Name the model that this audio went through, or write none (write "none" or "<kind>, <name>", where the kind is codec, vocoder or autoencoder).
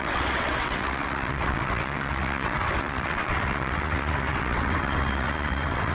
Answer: vocoder, WaveNeXt